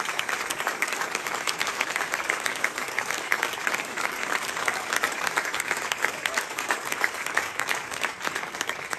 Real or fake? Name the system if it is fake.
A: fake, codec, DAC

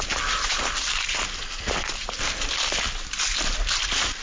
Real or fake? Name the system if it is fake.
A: real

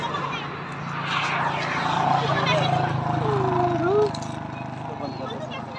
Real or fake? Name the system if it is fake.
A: real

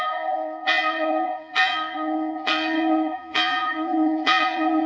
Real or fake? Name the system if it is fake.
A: fake, vocoder, Vocos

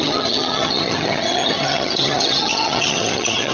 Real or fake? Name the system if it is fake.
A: fake, vocoder, HiFi-GAN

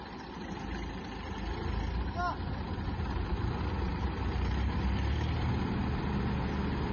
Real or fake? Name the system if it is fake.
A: real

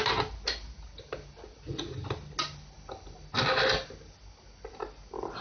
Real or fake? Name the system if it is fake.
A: real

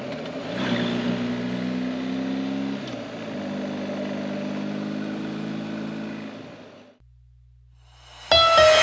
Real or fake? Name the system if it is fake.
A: real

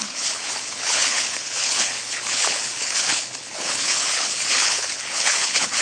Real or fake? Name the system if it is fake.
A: fake, codec, HILCodec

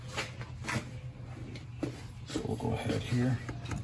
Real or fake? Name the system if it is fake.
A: real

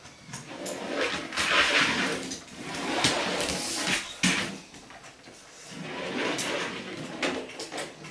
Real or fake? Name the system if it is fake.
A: real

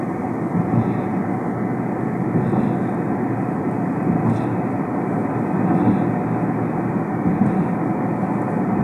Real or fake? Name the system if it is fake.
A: real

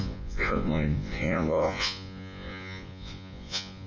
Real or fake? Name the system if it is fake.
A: fake, vocoder, Vocos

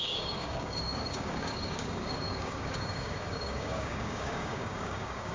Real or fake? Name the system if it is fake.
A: fake, codec, DAC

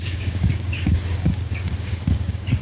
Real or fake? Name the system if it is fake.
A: fake, codec, DAC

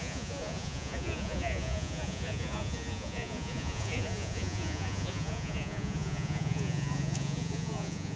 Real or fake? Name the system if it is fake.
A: fake, vocoder, Vocos